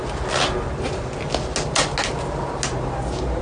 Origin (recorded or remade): recorded